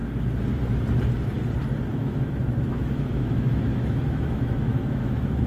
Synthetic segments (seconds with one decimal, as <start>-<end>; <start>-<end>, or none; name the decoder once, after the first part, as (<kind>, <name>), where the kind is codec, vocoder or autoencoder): 1.9-5.5 (autoencoder, DAC-VAE)